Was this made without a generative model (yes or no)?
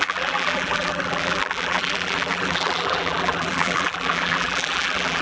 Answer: no